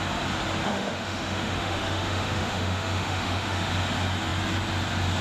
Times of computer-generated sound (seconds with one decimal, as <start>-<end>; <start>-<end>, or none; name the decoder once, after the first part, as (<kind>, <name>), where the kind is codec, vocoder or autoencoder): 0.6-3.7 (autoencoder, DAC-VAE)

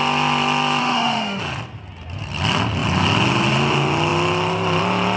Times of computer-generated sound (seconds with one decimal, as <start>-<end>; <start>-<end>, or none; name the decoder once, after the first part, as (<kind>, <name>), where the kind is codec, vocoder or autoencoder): 0.8-1.4 (autoencoder, DAC-VAE)

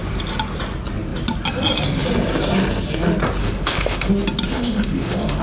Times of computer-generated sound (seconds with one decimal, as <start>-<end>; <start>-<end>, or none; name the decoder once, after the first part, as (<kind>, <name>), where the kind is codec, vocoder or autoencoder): 3.4-4.1 (autoencoder, DAC-VAE); 4.5-5.4